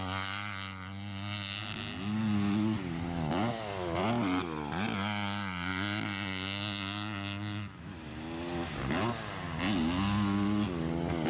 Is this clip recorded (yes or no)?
yes